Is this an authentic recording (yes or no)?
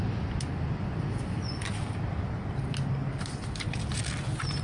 yes